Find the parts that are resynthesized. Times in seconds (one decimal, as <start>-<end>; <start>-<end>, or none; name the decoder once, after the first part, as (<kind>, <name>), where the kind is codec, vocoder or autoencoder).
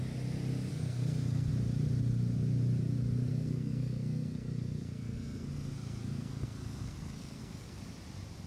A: 0.7-1.5 (codec, SNAC); 3.3-7.8